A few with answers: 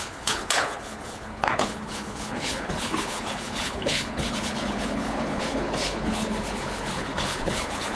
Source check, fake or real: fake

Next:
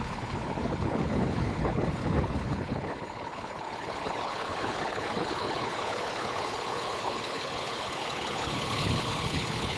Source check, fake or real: fake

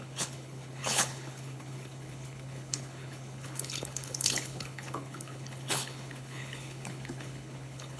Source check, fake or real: fake